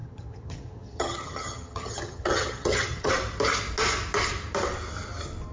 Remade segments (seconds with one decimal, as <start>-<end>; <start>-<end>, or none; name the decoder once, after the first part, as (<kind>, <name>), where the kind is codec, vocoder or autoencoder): 0.0-3.1 (vocoder, HiFi-GAN)